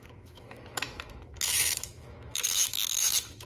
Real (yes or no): no